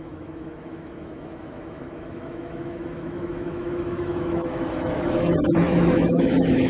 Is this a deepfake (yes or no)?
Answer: yes